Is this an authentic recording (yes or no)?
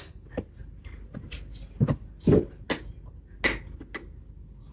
yes